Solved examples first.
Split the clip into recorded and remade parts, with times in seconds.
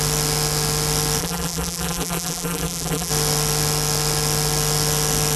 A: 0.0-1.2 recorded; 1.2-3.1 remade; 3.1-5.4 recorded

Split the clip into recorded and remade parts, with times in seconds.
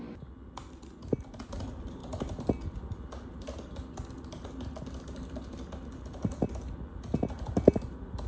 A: 0.0-8.3 recorded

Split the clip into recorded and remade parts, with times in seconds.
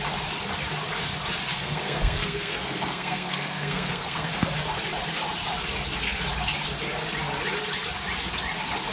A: 0.0-1.5 recorded; 1.5-4.3 remade; 4.3-8.9 recorded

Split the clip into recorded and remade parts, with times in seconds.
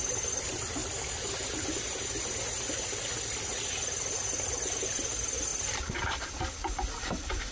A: 0.0-7.5 recorded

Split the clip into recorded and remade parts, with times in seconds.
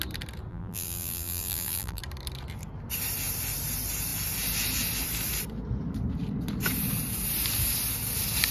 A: 0.0-0.5 recorded; 0.5-2.0 remade; 2.0-8.5 recorded